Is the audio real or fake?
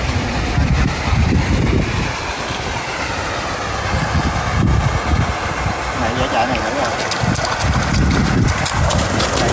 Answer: real